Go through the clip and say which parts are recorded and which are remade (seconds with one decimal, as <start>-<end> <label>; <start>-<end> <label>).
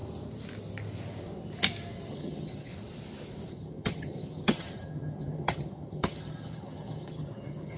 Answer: 0.0-2.1 recorded; 2.1-2.7 remade; 2.7-3.5 recorded; 3.5-7.8 remade